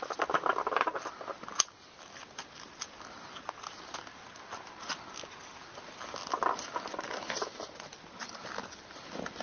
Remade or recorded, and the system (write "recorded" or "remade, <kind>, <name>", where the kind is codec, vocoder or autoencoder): recorded